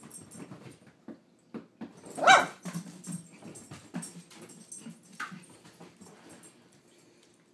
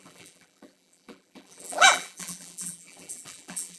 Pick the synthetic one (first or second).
second